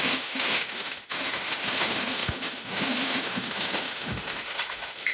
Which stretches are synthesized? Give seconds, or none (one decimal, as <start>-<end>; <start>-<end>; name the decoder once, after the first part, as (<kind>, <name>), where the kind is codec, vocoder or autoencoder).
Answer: 0.0-5.1 (autoencoder, DAC-VAE)